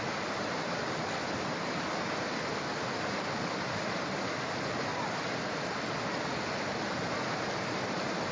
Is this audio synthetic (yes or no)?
no